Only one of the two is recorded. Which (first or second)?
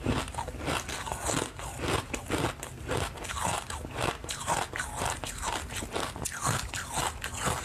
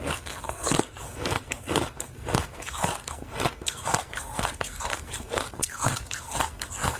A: first